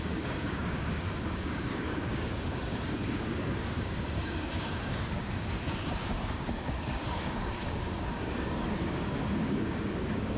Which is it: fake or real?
fake